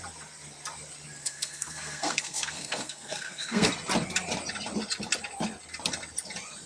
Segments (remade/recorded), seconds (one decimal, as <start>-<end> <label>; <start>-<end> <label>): 0.0-1.2 recorded; 1.2-3.7 remade; 3.7-6.7 recorded